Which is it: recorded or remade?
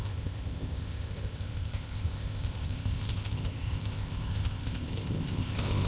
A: remade